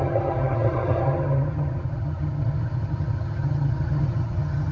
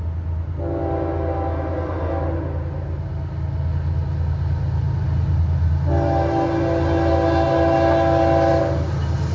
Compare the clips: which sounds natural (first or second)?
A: second